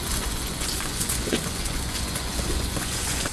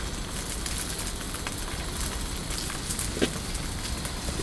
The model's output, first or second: first